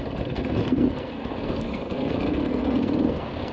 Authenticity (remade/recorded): remade